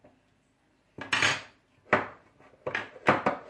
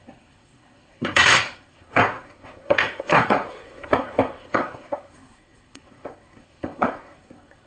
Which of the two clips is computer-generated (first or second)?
second